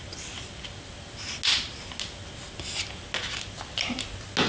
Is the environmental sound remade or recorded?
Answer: recorded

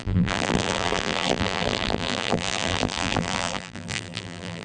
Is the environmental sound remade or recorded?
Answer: remade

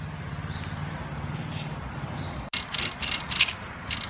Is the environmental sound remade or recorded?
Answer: recorded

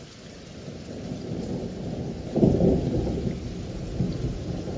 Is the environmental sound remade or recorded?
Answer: recorded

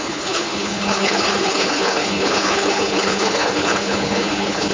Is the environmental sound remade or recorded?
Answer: remade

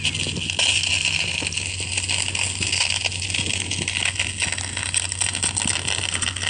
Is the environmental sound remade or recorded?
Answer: recorded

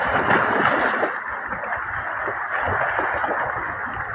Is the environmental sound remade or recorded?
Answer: recorded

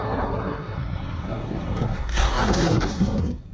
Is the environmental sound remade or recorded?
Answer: remade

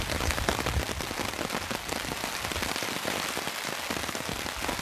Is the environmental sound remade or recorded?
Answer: recorded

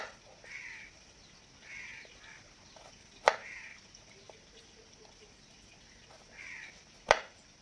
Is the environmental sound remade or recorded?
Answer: recorded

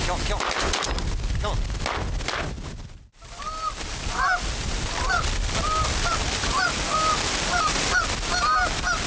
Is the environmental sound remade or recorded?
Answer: recorded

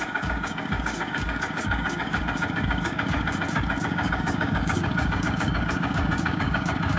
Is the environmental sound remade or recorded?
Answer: remade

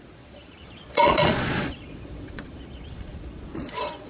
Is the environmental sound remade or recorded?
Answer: remade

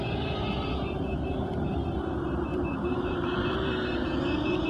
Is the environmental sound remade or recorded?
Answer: remade